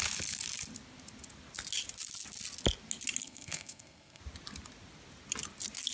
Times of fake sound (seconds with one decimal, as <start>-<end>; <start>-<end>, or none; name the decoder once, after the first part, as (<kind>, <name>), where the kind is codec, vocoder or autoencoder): 3.2-4.2 (codec, SNAC)